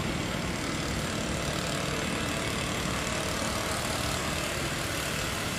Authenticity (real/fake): real